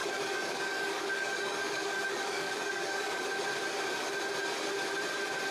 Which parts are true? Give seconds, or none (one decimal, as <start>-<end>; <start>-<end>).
3.3-5.5